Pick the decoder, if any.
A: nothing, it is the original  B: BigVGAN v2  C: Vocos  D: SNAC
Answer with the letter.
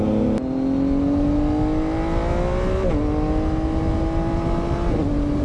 A